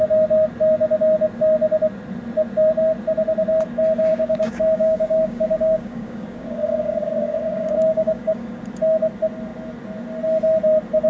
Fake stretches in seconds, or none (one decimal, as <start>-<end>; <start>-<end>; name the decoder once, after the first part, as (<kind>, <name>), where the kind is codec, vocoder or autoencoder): 4.1-8.6 (codec, DAC)